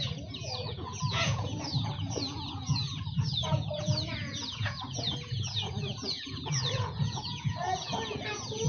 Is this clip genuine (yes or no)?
no